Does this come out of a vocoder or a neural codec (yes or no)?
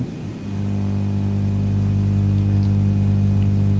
no